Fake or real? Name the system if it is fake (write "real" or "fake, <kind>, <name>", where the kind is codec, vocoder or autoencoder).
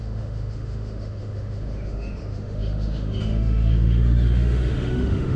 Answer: fake, autoencoder, DAC-VAE